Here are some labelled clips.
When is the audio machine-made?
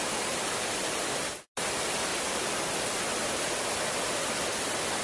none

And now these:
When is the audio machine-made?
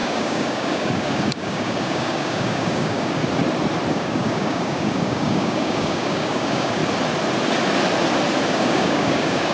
0.0-3.2 (codec, DAC); 3.9-6.8; 8.5-9.5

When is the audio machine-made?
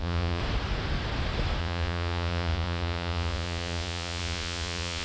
0.0-0.4 (vocoder, Vocos); 1.6-5.0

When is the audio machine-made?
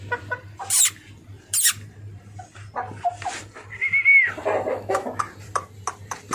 4.7-5.2 (autoencoder, DAC-VAE)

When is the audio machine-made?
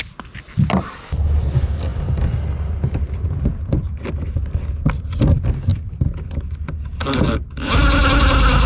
none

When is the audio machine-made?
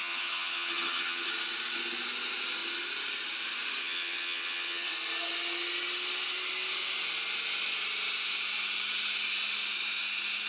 0.0-1.3 (vocoder, HiFi-GAN); 3.8-4.9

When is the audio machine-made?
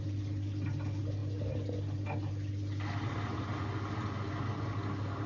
none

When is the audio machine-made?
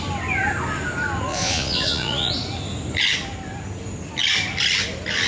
1.3-2.3 (vocoder, Vocos)